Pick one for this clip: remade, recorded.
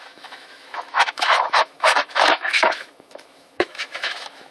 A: remade